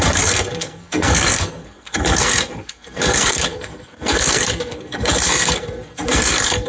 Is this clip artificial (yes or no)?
yes